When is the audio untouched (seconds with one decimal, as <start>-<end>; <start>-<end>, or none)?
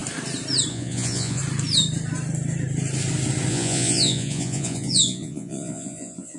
0.0-0.7; 1.4-3.5